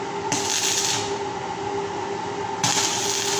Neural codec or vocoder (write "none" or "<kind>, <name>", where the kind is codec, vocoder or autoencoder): none